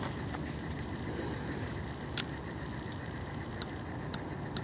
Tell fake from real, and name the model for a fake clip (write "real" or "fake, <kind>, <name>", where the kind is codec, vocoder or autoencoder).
real